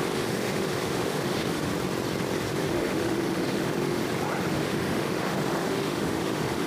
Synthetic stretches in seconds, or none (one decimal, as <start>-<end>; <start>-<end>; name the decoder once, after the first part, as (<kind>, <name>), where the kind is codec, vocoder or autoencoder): 0.0-1.7 (autoencoder, DAC-VAE); 2.6-4.0; 4.5-6.7